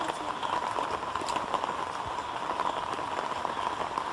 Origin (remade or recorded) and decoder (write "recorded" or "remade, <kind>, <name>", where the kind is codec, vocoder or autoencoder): recorded